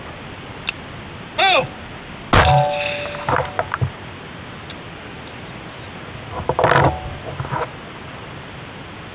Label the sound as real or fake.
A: real